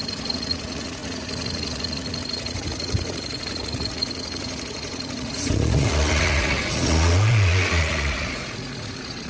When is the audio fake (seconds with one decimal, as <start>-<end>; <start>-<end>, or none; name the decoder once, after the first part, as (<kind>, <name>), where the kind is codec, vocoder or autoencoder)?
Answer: 0.0-9.3 (vocoder, Vocos)